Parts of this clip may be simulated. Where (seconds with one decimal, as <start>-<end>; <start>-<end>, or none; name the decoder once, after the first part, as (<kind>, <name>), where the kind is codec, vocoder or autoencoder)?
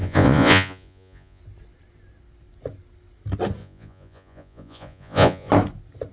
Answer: 0.0-1.4 (vocoder, Vocos); 3.6-5.5